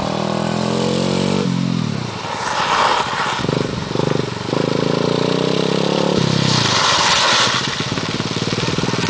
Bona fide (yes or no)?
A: yes